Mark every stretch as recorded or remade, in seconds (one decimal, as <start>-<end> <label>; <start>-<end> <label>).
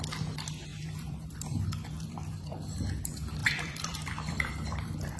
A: 0.0-0.7 recorded; 0.7-2.9 remade; 2.9-3.4 recorded; 3.4-5.2 remade